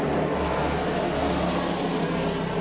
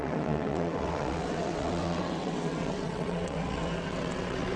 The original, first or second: first